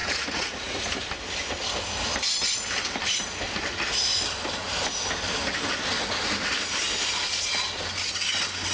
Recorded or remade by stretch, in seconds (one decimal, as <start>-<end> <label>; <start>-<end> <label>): 0.0-0.8 remade; 0.8-8.7 recorded